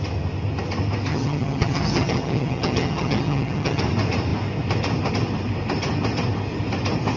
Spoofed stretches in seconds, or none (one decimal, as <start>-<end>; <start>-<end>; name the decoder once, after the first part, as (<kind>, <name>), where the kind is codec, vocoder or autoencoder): 1.1-3.8 (vocoder, HiFi-GAN)